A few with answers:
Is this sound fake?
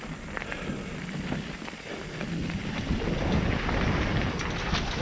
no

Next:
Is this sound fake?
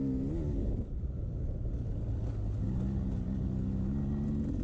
no